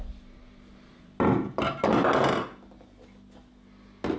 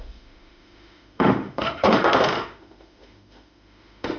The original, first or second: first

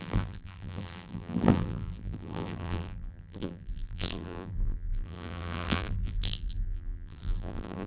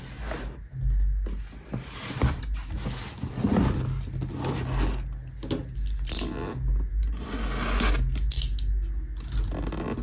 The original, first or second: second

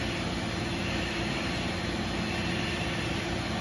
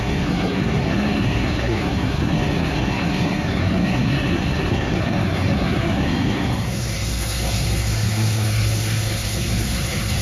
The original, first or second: first